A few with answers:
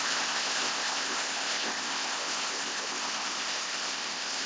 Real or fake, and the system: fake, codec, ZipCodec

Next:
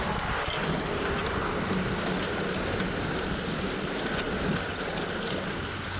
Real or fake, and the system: real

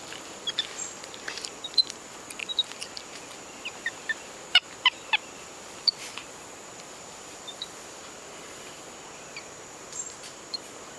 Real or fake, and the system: fake, vocoder, BigVGAN v2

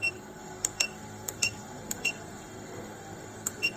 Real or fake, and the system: fake, codec, SNAC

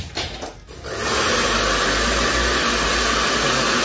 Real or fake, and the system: real